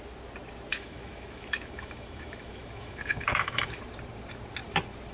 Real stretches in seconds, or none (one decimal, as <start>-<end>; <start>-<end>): 0.0-0.7; 3.8-5.1